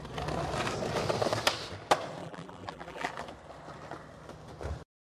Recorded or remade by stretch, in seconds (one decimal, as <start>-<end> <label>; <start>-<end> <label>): 0.0-2.2 recorded; 2.2-3.1 remade; 3.1-5.2 recorded